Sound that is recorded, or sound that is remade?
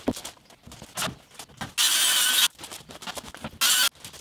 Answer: recorded